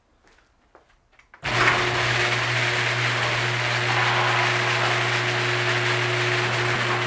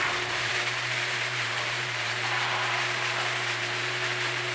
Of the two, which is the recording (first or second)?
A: first